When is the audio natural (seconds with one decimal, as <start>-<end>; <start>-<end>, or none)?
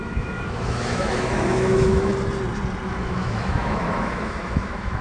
2.1-2.9